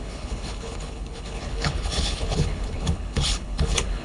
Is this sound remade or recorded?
remade